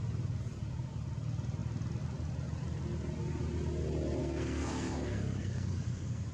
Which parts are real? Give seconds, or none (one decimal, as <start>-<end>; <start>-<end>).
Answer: 0.0-4.2